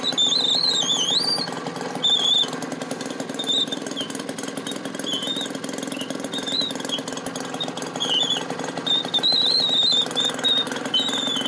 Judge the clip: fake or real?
real